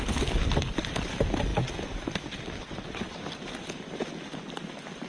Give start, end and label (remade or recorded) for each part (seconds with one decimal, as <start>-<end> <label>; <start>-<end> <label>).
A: 0.0-5.1 recorded